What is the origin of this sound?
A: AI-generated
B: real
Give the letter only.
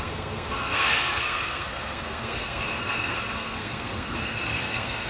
A